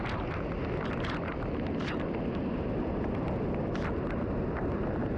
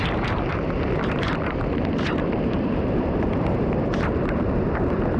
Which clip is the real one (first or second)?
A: first